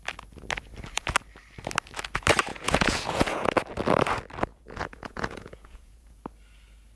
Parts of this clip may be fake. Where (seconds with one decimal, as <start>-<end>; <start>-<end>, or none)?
2.5-3.5; 4.5-6.2